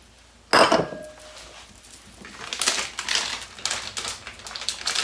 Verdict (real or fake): real